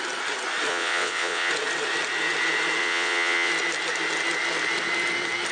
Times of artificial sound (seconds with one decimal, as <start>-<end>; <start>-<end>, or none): 0.7-1.5; 2.8-3.5